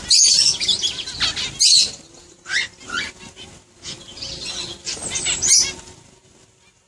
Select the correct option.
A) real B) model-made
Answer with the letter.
A